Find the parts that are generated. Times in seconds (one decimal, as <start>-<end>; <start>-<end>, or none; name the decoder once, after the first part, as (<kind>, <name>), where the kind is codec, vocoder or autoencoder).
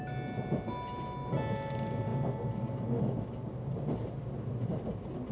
none